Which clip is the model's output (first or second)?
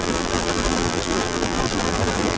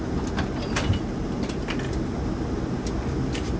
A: first